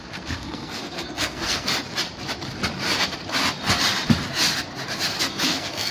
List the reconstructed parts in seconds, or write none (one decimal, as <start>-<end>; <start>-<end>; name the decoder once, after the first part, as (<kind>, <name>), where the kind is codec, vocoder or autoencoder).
0.0-1.7 (codec, SNAC); 5.2-5.9